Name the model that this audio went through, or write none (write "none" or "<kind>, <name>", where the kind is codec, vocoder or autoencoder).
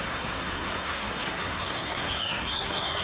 codec, SNAC